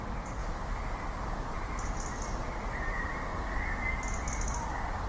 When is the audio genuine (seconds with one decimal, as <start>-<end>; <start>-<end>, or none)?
0.0-5.1